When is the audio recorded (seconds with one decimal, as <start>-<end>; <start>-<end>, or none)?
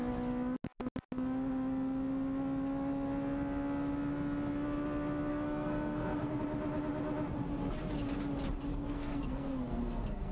0.0-5.3; 6.4-8.7